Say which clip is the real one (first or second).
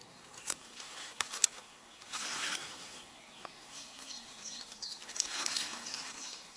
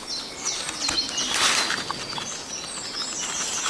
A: second